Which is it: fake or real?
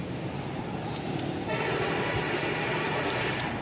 fake